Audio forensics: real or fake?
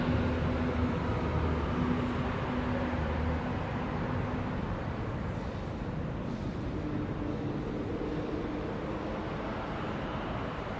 real